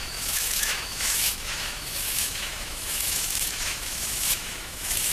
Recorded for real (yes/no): no